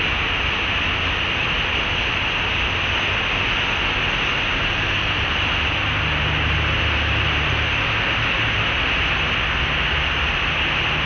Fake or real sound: real